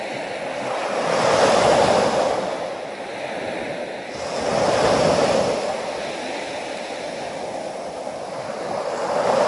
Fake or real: real